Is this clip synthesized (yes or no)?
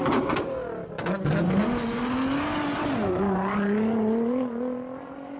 no